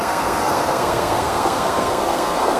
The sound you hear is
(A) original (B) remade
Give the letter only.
B